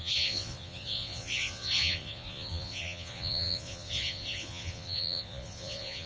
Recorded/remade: remade